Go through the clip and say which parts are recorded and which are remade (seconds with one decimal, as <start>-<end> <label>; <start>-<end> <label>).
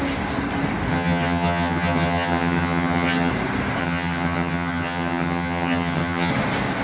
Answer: 0.0-0.9 recorded; 0.9-3.3 remade; 3.3-3.8 recorded; 3.8-6.3 remade; 6.3-6.8 recorded